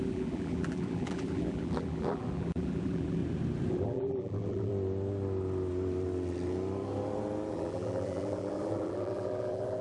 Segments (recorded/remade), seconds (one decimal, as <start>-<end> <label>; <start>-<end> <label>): 0.0-3.2 remade; 3.2-3.7 recorded; 3.7-4.7 remade; 4.7-7.5 recorded; 7.5-9.8 remade